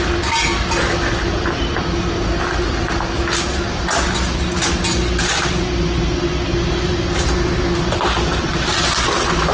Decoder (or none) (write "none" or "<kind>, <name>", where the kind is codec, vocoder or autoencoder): none